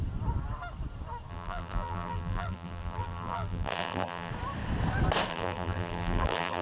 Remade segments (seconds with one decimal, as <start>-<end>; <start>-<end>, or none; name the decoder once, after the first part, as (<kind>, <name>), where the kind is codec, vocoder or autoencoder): 1.3-4.3 (vocoder, BigVGAN v2); 5.3-6.6